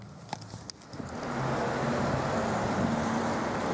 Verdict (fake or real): real